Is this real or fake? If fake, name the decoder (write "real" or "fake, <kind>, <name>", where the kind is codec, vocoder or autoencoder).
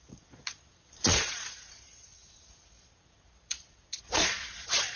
fake, vocoder, Vocos